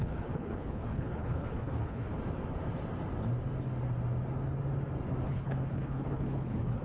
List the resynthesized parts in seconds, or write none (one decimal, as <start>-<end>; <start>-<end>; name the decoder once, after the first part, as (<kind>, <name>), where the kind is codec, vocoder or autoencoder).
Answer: 0.0-2.1 (codec, HILCodec); 5.3-6.8